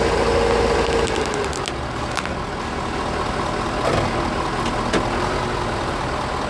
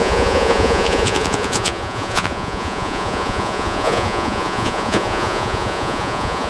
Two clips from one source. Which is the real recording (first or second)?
first